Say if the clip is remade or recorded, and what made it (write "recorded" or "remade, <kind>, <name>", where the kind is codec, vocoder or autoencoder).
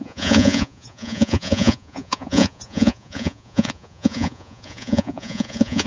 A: remade, vocoder, Vocos